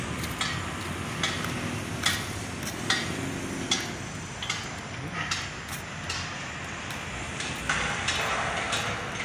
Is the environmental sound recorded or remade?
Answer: recorded